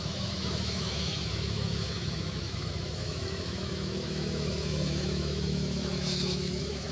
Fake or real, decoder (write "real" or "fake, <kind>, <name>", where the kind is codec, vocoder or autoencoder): fake, autoencoder, DAC-VAE